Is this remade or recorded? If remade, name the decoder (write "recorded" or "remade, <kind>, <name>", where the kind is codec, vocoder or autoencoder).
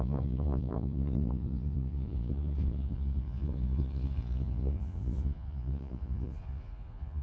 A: remade, vocoder, Vocos